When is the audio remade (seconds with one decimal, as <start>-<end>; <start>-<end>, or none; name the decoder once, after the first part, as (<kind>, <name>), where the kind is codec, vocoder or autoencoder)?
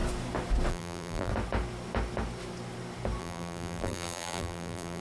0.7-1.3 (vocoder, BigVGAN v2); 3.2-5.0